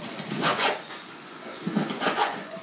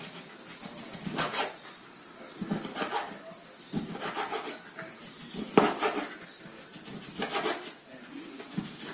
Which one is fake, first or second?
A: first